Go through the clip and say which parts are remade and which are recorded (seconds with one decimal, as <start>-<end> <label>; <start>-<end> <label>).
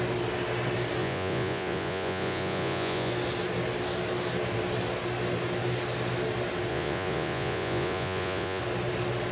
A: 0.0-1.0 recorded; 1.0-3.1 remade; 3.1-6.7 recorded; 6.7-8.6 remade; 8.6-9.3 recorded